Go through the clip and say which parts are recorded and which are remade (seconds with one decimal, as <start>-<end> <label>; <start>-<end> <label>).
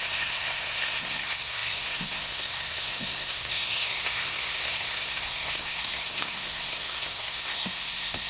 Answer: 0.0-8.3 remade